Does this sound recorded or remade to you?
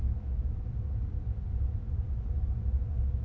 recorded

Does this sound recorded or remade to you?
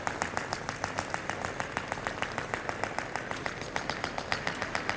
recorded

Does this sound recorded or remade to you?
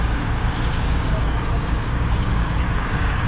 remade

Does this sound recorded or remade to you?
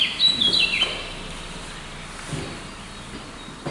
recorded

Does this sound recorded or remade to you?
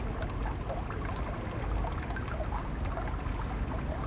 recorded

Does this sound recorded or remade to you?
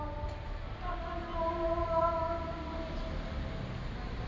recorded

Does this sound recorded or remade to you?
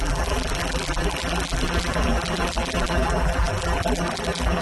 remade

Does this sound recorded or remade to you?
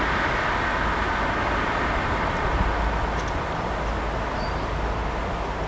recorded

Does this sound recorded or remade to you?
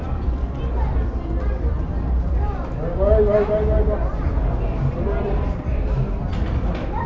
recorded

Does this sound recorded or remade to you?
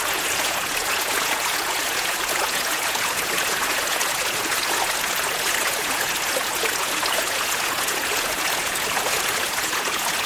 remade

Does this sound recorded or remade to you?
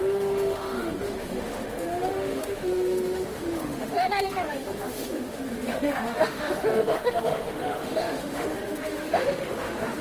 remade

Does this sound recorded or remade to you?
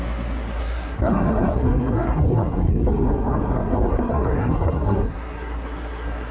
remade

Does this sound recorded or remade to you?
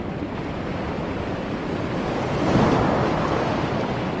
remade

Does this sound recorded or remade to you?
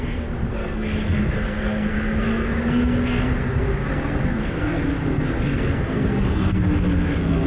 remade